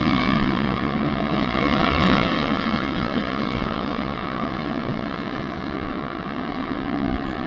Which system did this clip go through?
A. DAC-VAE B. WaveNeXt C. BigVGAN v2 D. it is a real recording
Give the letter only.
B